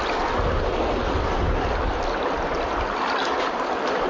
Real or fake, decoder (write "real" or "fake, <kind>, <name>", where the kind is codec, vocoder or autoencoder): real